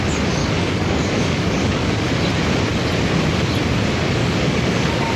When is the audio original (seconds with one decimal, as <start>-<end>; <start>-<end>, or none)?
0.0-0.4; 2.1-4.2